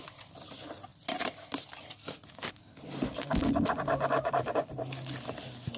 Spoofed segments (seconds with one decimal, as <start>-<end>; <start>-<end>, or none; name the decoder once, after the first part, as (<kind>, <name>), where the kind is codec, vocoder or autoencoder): none